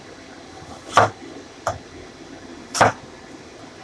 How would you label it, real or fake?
real